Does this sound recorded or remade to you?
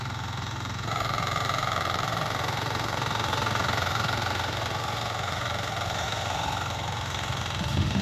remade